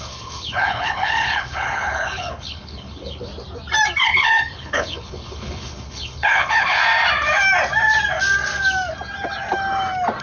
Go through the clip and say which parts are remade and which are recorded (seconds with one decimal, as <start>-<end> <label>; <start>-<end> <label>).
0.0-3.3 remade; 3.3-4.0 recorded; 4.0-6.8 remade; 6.8-10.2 recorded